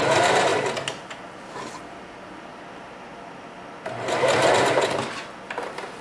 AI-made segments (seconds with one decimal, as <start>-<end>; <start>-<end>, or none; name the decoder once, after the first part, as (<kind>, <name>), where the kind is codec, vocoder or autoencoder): none